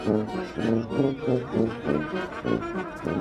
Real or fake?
fake